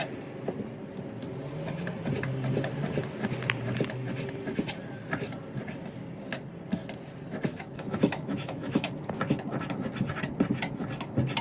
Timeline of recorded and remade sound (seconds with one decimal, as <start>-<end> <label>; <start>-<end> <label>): 0.0-7.5 recorded; 7.5-8.9 remade; 8.9-11.4 recorded